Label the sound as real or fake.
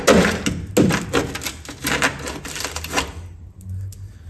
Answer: real